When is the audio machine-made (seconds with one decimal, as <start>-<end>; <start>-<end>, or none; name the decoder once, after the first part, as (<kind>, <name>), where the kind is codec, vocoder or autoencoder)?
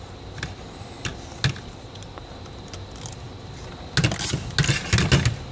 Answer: none